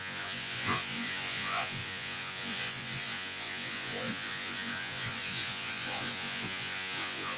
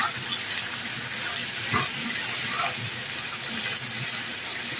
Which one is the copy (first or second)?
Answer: first